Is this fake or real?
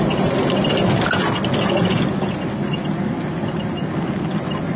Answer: real